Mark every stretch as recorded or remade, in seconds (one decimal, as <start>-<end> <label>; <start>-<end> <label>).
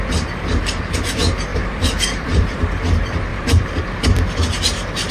0.0-1.5 recorded; 1.5-2.6 remade; 2.6-3.3 recorded; 3.3-3.8 remade; 3.8-5.1 recorded